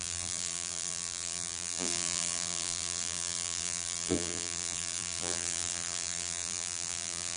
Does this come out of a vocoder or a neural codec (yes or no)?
yes